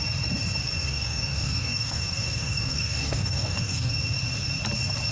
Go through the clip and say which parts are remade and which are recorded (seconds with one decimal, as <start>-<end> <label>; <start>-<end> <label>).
0.0-0.8 recorded; 0.8-3.9 remade; 3.9-5.1 recorded